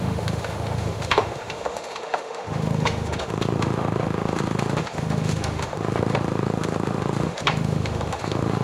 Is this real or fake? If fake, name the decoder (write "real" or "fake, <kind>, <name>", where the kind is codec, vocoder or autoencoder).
fake, autoencoder, DAC-VAE